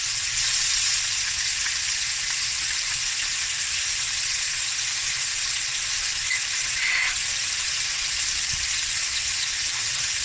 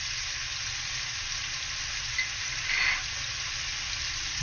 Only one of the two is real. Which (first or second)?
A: second